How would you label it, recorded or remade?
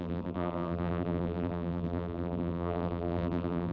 remade